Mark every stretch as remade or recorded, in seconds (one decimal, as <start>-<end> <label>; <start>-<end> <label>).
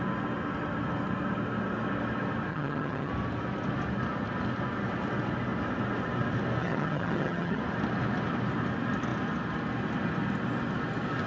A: 0.0-2.5 recorded; 2.5-3.1 remade; 3.1-6.6 recorded; 6.6-7.6 remade; 7.6-11.3 recorded